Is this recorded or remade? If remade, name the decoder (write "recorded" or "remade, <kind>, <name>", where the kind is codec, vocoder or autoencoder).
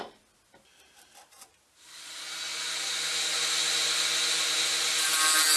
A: recorded